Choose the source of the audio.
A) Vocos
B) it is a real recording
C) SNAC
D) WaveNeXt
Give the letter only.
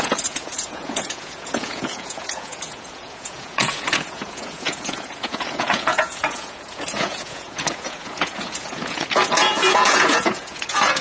A